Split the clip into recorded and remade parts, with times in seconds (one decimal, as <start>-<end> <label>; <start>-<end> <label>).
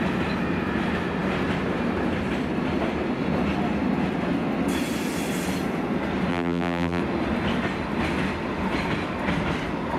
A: 0.0-6.3 recorded; 6.3-7.0 remade; 7.0-10.0 recorded